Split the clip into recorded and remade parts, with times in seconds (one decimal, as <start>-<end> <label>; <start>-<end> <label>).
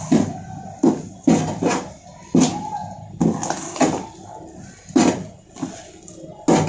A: 0.0-6.7 recorded